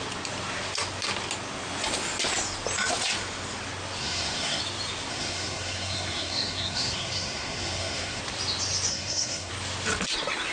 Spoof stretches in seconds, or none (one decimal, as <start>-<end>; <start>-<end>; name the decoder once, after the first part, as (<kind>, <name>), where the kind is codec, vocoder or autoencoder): 4.0-4.6 (codec, SNAC); 5.1-8.2; 8.9-9.5

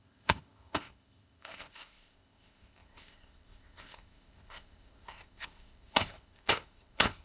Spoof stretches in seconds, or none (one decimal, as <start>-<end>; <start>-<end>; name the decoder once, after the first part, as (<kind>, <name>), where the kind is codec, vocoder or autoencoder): 0.0-7.2 (codec, ZipCodec)

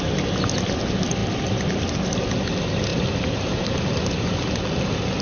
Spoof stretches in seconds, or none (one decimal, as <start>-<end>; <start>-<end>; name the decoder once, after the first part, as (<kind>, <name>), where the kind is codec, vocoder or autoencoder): none

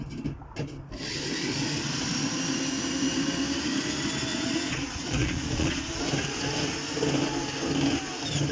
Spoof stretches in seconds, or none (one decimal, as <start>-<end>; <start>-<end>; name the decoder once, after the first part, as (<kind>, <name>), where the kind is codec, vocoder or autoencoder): 4.3-5.9 (vocoder, Vocos)

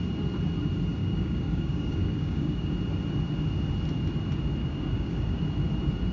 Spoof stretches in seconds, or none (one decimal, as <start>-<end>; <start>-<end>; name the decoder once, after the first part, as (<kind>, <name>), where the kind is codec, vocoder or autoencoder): 1.0-2.7 (codec, DAC); 4.6-5.5

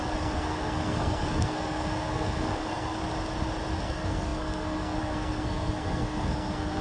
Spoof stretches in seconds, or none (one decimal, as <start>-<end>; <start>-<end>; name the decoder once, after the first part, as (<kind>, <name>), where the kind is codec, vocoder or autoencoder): 0.0-3.0 (codec, SNAC); 3.8-6.8

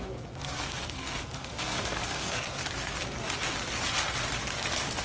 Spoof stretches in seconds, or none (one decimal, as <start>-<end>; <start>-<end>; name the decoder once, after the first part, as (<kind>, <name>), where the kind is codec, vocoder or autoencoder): 0.0-2.6 (codec, SNAC)

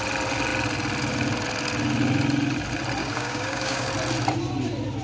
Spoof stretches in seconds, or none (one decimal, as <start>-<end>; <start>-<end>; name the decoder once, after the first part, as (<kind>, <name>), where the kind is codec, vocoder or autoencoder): 3.0-3.9 (codec, DAC)